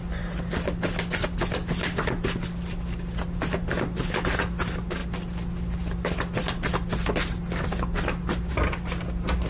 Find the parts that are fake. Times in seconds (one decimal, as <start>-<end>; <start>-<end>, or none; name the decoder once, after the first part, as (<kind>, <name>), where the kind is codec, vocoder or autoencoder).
none